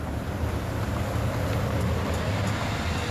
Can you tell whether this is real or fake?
real